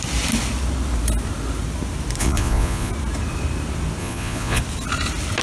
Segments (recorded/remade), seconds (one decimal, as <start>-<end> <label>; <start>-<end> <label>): 0.0-2.2 recorded; 2.2-2.9 remade; 2.9-4.0 recorded; 4.0-4.6 remade; 4.6-5.4 recorded